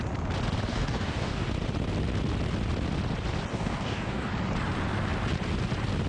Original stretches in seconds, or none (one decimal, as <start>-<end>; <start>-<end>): 0.0-0.7; 1.5-3.5; 4.3-6.1